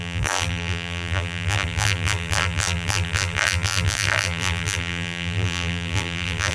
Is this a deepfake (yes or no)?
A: yes